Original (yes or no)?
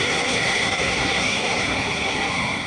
no